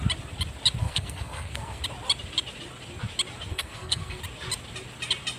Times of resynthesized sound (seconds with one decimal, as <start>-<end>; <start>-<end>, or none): 0.8-1.8; 3.5-4.2